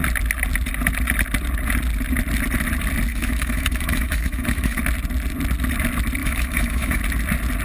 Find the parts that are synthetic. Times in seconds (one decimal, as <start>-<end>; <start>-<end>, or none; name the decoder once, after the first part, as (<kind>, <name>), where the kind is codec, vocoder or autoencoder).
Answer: 3.1-4.8 (autoencoder, DAC-VAE); 6.2-7.0